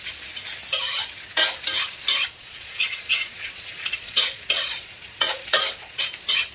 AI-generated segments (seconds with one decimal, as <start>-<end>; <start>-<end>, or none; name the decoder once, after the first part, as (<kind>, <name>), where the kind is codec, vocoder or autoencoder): 2.1-6.0 (vocoder, Vocos)